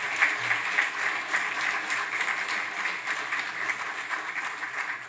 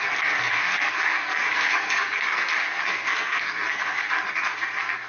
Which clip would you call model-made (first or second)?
second